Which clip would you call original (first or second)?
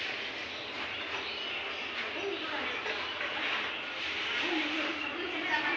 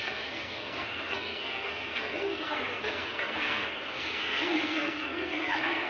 first